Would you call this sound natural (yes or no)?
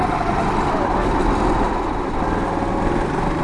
yes